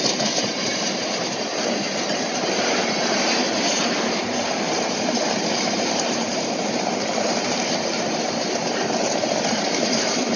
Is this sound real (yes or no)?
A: no